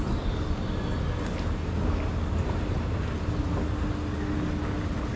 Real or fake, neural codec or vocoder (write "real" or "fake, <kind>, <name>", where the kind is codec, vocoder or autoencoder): real